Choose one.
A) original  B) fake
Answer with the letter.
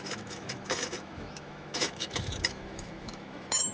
B